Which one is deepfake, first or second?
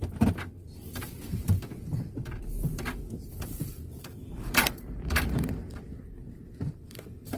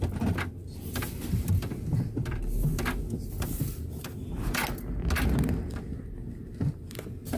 first